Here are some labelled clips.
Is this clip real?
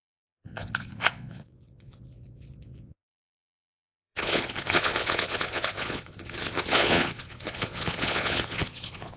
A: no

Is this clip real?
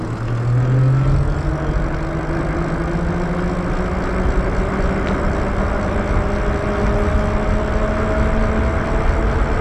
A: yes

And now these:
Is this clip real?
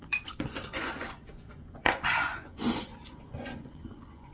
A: no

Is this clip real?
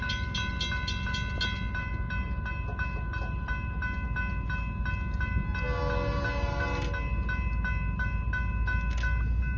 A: yes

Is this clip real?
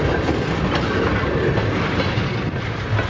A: yes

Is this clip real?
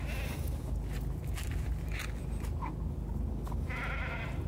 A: yes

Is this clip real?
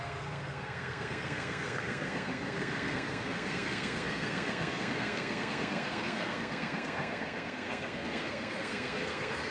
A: no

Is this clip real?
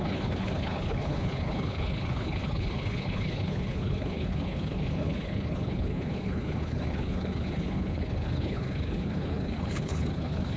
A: no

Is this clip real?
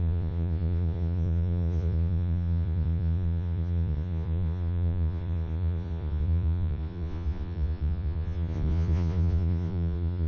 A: no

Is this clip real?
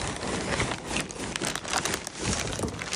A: yes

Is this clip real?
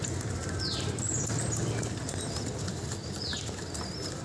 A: yes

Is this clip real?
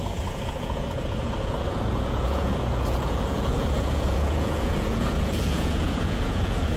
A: no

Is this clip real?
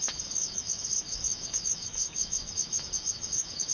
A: no